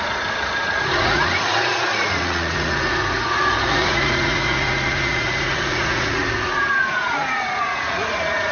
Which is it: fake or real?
fake